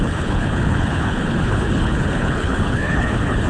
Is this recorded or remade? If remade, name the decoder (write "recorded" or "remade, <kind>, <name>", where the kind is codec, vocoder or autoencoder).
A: remade, codec, HILCodec